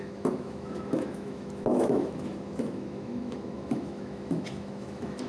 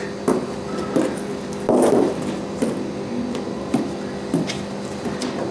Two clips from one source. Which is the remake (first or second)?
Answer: first